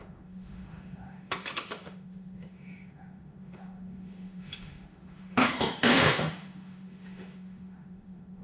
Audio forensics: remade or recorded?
remade